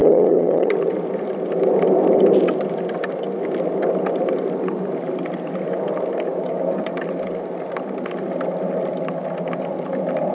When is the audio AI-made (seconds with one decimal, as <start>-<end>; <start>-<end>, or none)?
0.0-0.7